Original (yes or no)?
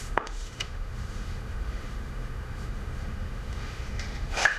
no